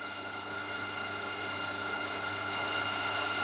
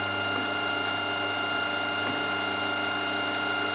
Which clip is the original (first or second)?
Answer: second